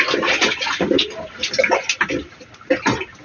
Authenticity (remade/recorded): recorded